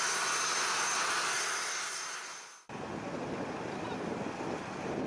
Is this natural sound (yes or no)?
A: yes